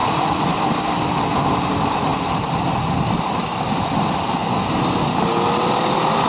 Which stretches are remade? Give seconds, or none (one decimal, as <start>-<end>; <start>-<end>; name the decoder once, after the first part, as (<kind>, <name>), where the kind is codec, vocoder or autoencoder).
0.0-0.6 (vocoder, Vocos)